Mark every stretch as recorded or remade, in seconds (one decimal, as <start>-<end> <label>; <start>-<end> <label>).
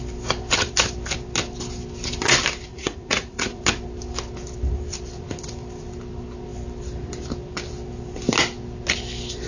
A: 0.0-2.7 recorded; 2.7-3.6 remade; 3.6-9.5 recorded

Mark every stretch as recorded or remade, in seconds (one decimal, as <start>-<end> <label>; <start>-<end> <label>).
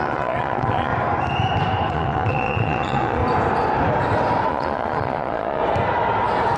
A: 0.0-0.9 remade; 0.9-1.9 recorded; 1.9-3.2 remade; 3.2-4.5 recorded; 4.5-5.6 remade; 5.6-6.6 recorded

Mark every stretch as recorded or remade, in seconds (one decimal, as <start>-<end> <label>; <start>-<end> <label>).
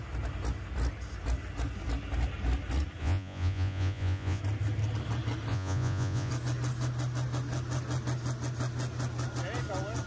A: 0.0-3.0 recorded; 3.0-4.4 remade; 4.4-5.5 recorded; 5.5-6.3 remade; 6.3-10.1 recorded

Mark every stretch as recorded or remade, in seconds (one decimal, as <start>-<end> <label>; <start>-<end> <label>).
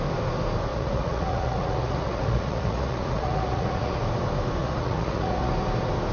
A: 0.0-0.7 recorded; 0.7-4.0 remade; 4.0-4.6 recorded; 4.6-5.5 remade; 5.5-6.1 recorded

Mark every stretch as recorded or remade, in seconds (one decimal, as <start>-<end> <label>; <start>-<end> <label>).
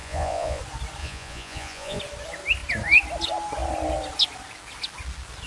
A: 0.0-0.6 remade; 0.6-1.0 recorded; 1.0-2.0 remade; 2.0-5.5 recorded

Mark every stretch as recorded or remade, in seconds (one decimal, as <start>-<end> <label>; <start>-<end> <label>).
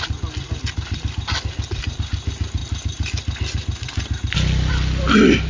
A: 0.0-5.5 recorded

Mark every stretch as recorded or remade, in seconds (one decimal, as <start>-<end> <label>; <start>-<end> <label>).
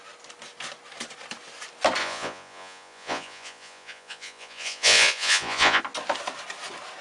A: 0.0-2.0 recorded; 2.0-5.8 remade; 5.8-7.0 recorded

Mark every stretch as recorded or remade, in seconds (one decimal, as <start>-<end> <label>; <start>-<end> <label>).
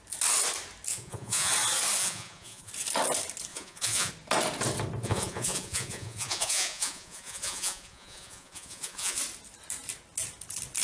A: 0.0-0.9 recorded; 0.9-1.5 remade; 1.5-2.0 recorded; 2.0-2.7 remade; 2.7-3.5 recorded; 3.5-4.1 remade; 4.1-5.0 recorded; 5.0-9.2 remade; 9.2-10.8 recorded